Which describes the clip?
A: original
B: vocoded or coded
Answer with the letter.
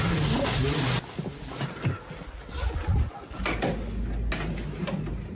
A